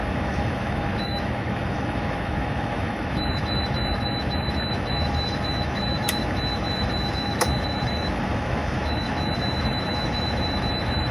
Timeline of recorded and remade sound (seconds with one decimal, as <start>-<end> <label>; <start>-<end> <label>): 0.0-11.1 remade